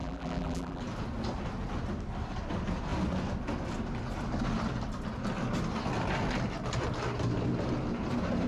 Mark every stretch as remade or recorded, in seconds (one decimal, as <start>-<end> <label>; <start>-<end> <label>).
0.0-0.8 remade; 0.8-8.5 recorded